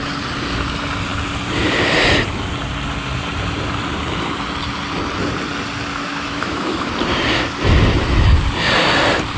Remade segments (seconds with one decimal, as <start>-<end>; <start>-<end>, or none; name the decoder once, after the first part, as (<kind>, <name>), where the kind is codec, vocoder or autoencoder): 5.9-6.9 (autoencoder, DAC-VAE)